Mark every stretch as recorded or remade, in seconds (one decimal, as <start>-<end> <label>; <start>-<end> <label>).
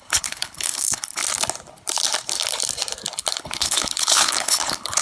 0.0-1.2 remade; 1.2-3.4 recorded; 3.4-5.0 remade